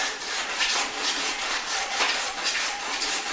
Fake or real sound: fake